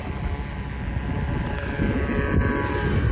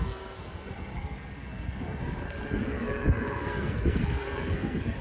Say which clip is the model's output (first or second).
second